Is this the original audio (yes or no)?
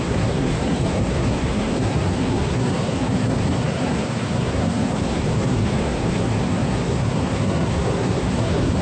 no